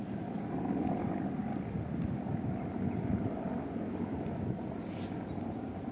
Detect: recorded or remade recorded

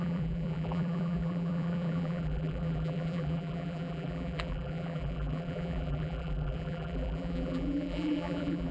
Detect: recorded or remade remade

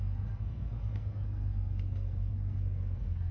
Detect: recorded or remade remade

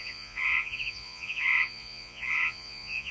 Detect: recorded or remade remade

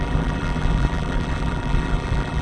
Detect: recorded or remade remade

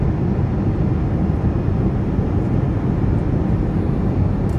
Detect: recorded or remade recorded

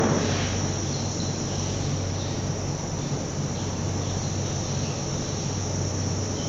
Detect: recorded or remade recorded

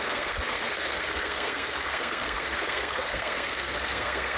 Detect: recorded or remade remade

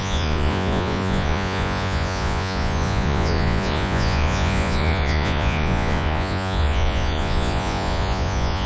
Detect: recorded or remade remade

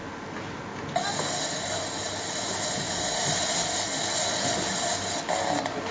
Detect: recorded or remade recorded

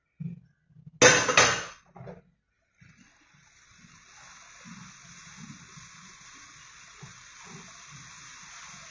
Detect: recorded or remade recorded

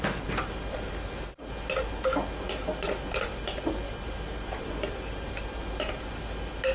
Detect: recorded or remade recorded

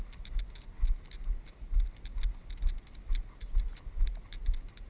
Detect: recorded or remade recorded